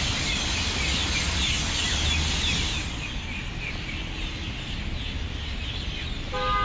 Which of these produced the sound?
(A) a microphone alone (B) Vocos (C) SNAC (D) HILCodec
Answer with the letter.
A